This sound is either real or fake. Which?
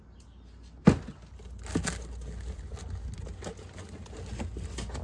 real